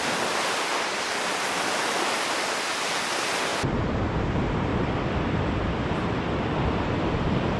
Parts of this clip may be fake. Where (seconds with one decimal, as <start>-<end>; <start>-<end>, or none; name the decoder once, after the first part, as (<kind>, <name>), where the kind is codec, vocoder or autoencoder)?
3.5-7.6 (vocoder, BigVGAN v2)